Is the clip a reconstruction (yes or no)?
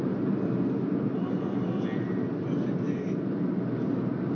no